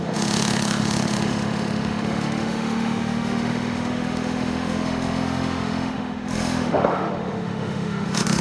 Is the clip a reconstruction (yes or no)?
yes